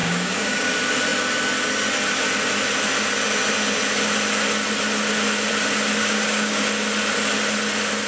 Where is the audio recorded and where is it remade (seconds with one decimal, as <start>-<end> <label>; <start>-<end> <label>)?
0.0-0.7 remade; 0.7-6.0 recorded; 6.0-6.6 remade; 6.6-8.1 recorded